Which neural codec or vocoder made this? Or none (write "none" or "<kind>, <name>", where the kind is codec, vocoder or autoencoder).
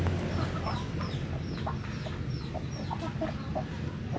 none